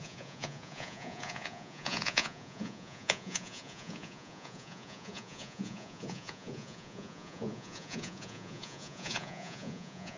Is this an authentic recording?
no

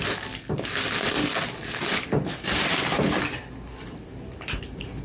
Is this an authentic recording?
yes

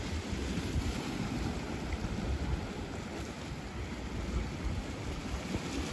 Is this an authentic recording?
yes